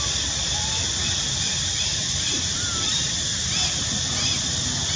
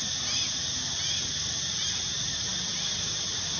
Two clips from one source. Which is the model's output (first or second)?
first